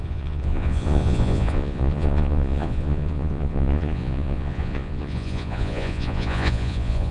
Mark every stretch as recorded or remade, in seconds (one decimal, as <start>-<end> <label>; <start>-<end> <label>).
0.0-7.1 remade